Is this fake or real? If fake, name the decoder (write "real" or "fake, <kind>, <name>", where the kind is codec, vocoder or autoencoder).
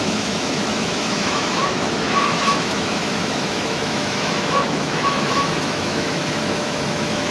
fake, autoencoder, DAC-VAE